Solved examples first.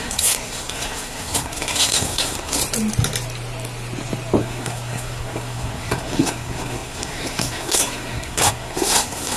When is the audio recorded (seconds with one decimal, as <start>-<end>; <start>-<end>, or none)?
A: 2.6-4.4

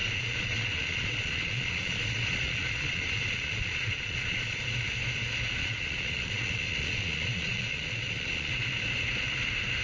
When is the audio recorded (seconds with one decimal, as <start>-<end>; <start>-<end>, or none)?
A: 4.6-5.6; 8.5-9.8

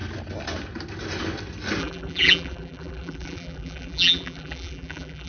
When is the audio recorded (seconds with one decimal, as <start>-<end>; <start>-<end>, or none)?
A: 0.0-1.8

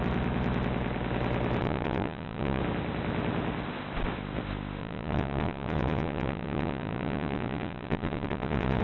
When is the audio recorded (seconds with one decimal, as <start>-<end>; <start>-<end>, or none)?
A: 0.0-1.6; 2.6-4.8

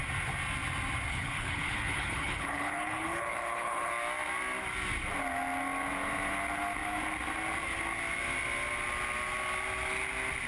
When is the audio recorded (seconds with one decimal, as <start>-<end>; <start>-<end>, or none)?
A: 0.0-1.1; 3.9-10.5

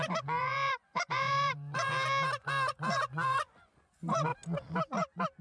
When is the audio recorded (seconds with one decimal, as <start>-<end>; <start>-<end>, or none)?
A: 1.9-2.4; 4.3-5.4

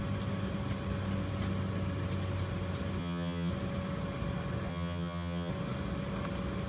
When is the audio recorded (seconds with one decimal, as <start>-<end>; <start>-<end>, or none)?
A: 0.0-3.0; 3.5-4.7; 5.5-6.7